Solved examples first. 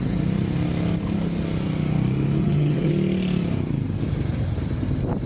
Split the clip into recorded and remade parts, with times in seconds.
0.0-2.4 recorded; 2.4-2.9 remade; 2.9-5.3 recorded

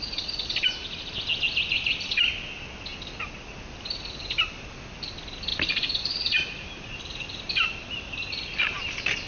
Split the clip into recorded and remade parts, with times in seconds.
0.0-9.3 recorded

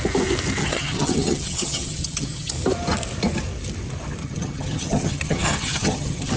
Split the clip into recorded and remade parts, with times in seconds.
0.0-0.6 recorded; 0.6-2.5 remade; 2.5-4.2 recorded; 4.2-6.4 remade

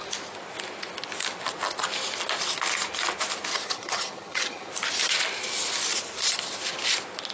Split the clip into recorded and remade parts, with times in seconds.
0.0-3.5 recorded; 3.5-4.7 remade; 4.7-7.3 recorded

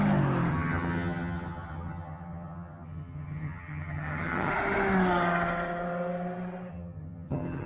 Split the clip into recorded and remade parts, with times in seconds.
0.0-0.5 recorded; 0.5-4.5 remade; 4.5-6.7 recorded; 6.7-7.7 remade

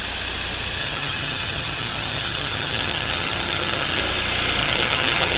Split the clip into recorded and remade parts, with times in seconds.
0.0-0.8 recorded; 0.8-4.0 remade; 4.0-4.6 recorded; 4.6-5.4 remade

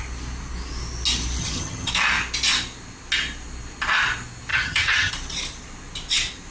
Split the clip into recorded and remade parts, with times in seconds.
0.0-1.4 recorded; 1.4-1.9 remade; 1.9-4.5 recorded; 4.5-5.1 remade; 5.1-6.5 recorded